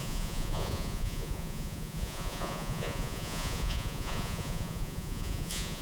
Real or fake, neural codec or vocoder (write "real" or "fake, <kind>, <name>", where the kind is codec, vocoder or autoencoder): fake, vocoder, Vocos